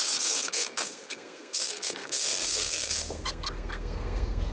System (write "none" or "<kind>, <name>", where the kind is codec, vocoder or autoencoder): codec, SNAC